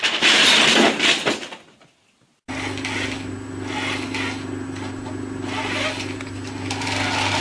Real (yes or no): yes